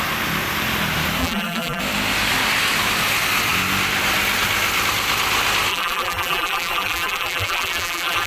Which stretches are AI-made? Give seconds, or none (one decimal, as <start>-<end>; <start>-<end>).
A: 1.2-1.8; 5.7-8.3